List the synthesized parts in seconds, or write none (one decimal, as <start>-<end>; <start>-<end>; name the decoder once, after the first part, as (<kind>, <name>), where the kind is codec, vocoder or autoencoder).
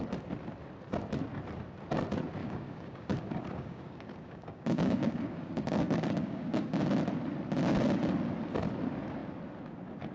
2.4-6.8 (codec, DAC)